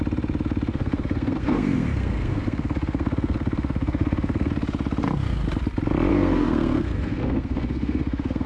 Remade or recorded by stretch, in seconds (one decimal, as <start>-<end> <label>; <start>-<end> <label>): 0.0-0.7 recorded; 0.7-4.5 remade; 4.5-6.1 recorded; 6.1-8.5 remade